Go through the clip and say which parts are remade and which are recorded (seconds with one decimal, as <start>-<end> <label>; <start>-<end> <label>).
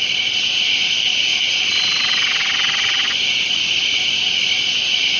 0.0-5.2 recorded